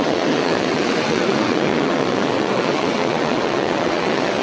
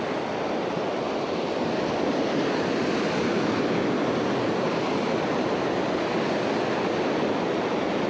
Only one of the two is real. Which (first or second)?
second